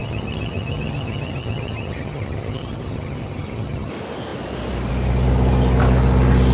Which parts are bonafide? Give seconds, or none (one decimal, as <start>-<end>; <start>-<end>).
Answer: 3.9-6.5